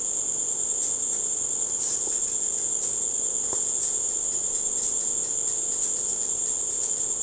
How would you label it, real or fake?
real